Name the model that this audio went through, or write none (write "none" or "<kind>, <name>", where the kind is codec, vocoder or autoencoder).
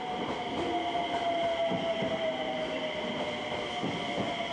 none